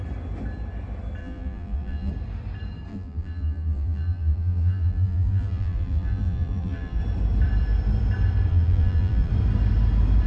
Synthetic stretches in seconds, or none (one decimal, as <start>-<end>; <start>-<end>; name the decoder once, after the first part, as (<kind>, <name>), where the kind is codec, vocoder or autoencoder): 1.2-2.1 (vocoder, BigVGAN v2); 2.9-7.0; 8.5-9.3

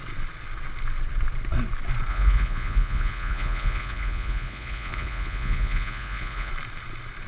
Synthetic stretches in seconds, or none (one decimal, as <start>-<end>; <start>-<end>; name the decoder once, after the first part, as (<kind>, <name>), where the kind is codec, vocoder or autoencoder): 2.1-6.5 (vocoder, Vocos)

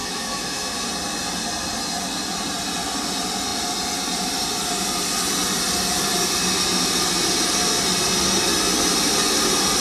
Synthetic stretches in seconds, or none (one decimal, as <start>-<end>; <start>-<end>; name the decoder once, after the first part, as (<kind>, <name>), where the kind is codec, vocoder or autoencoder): 0.0-0.9 (autoencoder, DAC-VAE)

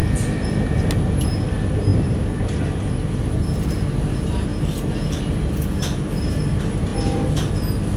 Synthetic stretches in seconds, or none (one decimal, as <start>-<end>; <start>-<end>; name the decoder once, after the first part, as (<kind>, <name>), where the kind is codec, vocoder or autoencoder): 0.0-0.8 (vocoder, BigVGAN v2); 4.5-5.2

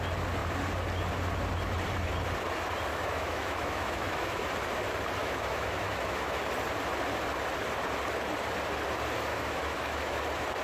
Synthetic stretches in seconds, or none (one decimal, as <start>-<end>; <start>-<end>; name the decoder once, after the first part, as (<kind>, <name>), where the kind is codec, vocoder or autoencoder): 2.9-4.4 (autoencoder, DAC-VAE); 5.2-6.4; 9.3-10.2

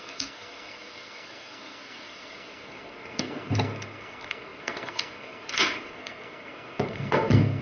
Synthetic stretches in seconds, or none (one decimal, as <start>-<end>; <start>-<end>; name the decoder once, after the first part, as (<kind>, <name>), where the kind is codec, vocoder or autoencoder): 0.0-7.6 (codec, SNAC)

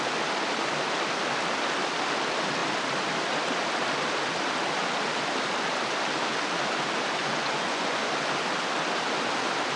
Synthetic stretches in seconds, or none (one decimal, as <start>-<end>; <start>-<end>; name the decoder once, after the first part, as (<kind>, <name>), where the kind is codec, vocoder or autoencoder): 7.2-8.1 (vocoder, Vocos)

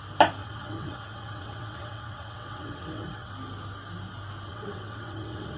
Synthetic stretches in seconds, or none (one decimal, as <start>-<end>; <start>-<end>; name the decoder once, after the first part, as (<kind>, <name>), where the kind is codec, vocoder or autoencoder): 0.4-3.3 (vocoder, WaveNeXt); 4.5-5.6